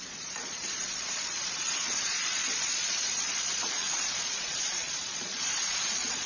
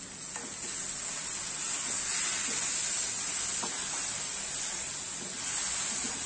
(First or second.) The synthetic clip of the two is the first